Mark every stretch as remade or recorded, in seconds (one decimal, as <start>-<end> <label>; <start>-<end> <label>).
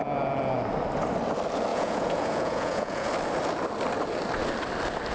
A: 0.0-1.7 recorded; 1.7-3.1 remade; 3.1-5.1 recorded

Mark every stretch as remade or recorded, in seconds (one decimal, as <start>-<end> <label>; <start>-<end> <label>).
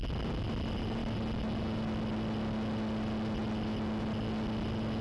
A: 0.0-5.0 recorded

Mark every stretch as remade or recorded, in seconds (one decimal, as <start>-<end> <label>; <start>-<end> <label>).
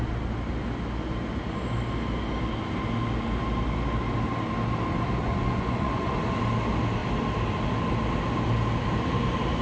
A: 0.0-5.2 recorded; 5.2-6.1 remade; 6.1-9.6 recorded